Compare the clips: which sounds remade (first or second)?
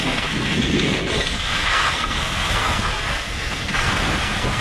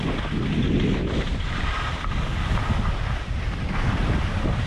first